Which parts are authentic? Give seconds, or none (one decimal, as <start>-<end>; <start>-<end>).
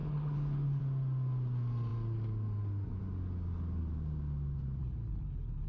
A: 0.8-4.8